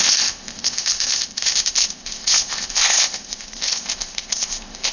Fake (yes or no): yes